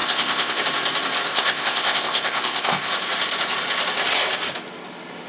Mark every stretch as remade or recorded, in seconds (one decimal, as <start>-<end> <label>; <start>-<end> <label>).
0.0-0.6 remade; 0.6-1.3 recorded; 1.3-2.9 remade; 2.9-5.3 recorded